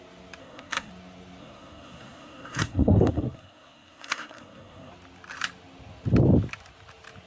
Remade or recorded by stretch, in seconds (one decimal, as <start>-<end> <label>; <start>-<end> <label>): 0.0-0.4 recorded; 0.4-0.9 remade; 0.9-1.4 recorded; 1.4-4.9 remade; 4.9-7.3 recorded